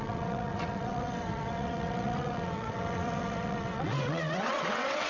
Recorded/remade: remade